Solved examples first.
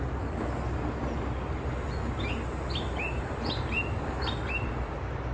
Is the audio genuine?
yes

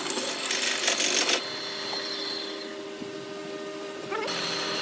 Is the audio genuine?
yes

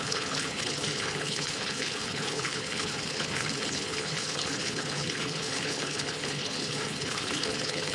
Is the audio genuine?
no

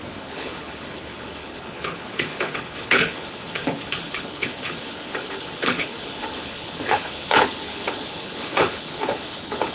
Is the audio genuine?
no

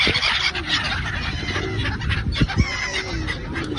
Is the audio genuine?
yes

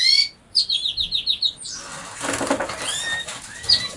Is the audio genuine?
yes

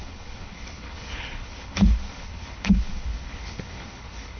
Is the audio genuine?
no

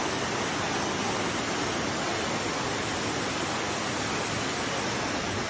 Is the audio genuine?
yes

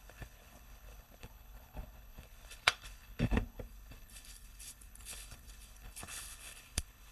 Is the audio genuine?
no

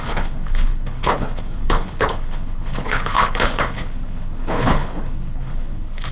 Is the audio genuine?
no